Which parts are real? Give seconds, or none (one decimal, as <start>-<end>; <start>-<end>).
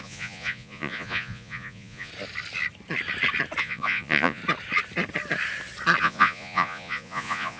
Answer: 2.1-3.6; 4.4-6.0